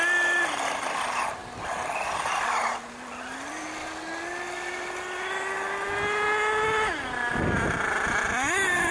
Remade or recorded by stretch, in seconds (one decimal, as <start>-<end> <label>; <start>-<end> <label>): 0.0-8.9 recorded